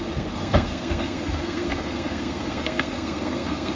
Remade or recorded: remade